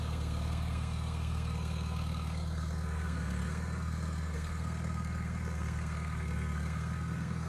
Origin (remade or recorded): remade